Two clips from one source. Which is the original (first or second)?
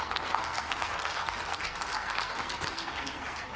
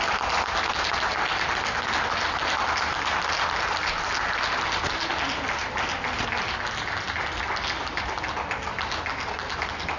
second